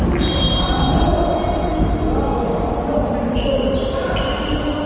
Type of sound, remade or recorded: recorded